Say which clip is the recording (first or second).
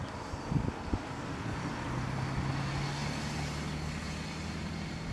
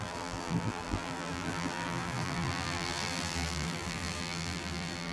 first